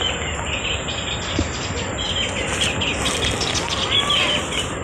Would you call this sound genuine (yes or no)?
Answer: yes